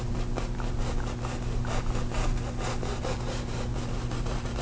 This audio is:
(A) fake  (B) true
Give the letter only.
B